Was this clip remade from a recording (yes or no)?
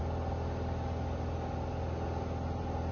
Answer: no